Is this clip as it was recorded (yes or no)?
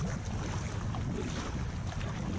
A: yes